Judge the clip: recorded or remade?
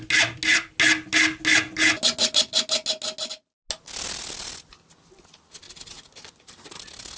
recorded